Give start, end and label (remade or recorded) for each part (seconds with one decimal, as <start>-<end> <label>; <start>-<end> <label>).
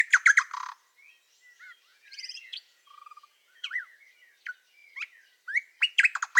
0.0-1.9 recorded; 1.9-3.8 remade; 3.8-6.4 recorded